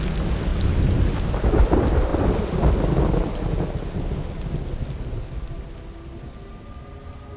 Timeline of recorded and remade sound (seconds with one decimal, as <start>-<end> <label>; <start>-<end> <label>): 0.0-7.4 recorded